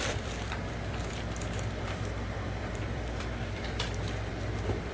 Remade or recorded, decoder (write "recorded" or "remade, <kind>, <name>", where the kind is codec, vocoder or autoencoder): remade, vocoder, BigVGAN v2